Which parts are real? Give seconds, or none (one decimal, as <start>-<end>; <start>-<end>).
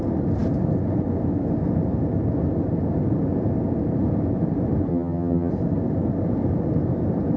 0.0-4.9; 5.5-7.4